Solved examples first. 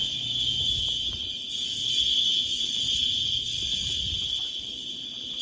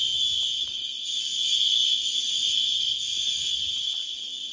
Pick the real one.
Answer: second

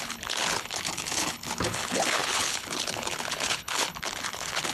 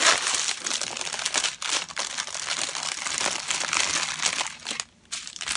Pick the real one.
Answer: second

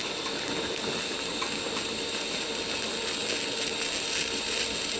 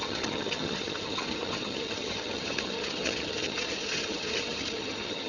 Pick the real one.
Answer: first